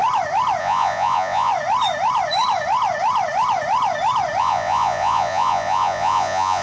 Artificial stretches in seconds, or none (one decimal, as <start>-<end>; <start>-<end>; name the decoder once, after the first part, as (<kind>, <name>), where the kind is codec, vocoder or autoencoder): 0.6-1.5 (vocoder, Vocos); 4.4-6.6